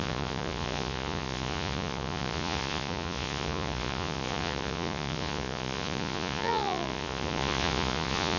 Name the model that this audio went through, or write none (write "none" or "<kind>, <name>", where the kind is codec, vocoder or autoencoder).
vocoder, Vocos